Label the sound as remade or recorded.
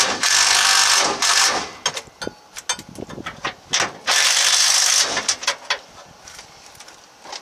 recorded